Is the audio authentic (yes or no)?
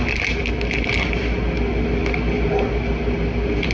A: yes